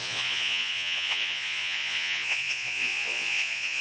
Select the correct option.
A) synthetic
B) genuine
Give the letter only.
A